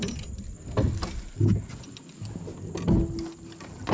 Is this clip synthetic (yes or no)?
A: no